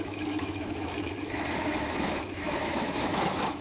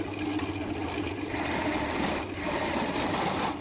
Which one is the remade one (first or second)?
first